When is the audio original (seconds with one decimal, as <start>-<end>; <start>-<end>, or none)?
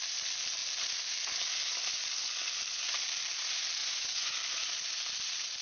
0.0-3.8; 4.3-5.6